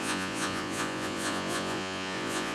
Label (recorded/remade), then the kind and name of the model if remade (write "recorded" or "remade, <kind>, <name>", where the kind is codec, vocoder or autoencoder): remade, vocoder, Vocos